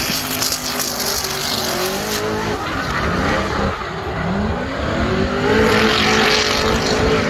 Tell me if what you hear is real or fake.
real